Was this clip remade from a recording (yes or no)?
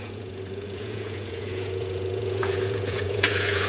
yes